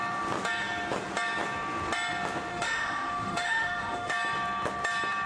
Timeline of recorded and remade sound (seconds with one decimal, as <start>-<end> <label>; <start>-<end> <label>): 0.0-2.5 recorded; 2.5-4.1 remade; 4.1-5.3 recorded